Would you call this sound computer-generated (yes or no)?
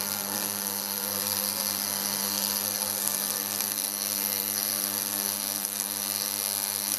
yes